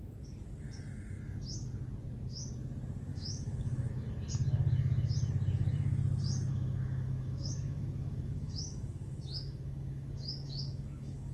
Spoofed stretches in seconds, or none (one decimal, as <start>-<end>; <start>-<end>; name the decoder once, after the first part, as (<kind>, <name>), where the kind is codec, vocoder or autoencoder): 3.1-3.9 (autoencoder, DAC-VAE); 6.5-11.3